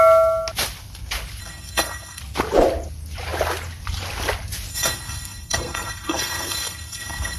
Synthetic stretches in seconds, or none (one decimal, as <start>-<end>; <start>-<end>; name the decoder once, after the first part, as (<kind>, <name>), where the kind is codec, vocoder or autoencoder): 1.4-2.2 (codec, SNAC); 4.7-7.4